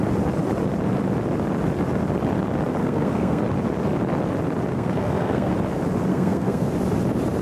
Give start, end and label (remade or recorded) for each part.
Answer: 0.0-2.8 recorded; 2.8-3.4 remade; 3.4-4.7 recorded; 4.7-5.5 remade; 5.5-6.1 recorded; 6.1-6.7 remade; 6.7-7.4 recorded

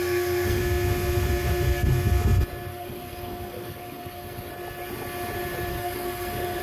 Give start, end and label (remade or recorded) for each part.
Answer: 0.0-0.6 remade; 0.6-2.7 recorded; 2.7-4.5 remade; 4.5-5.7 recorded; 5.7-6.6 remade

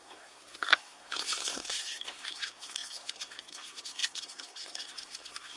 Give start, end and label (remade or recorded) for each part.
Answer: 0.0-5.6 remade

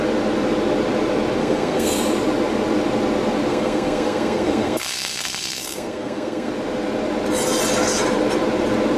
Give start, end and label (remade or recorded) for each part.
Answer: 0.0-1.4 recorded; 1.4-2.0 remade; 2.0-3.5 recorded; 3.5-6.5 remade; 6.5-9.0 recorded

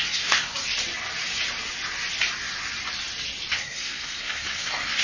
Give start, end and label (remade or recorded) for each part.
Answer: 0.0-0.5 remade; 0.5-3.5 recorded; 3.5-5.0 remade

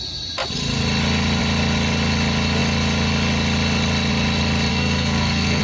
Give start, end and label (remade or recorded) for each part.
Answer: 0.0-4.7 recorded; 4.7-5.6 remade